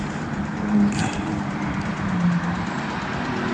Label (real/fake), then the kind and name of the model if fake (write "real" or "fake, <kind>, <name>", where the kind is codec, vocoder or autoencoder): fake, vocoder, BigVGAN v2